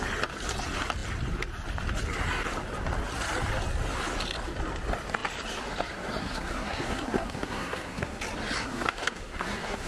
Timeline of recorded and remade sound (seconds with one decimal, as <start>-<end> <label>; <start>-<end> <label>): 0.0-6.2 recorded; 6.2-8.2 remade; 8.2-8.6 recorded; 8.6-9.9 remade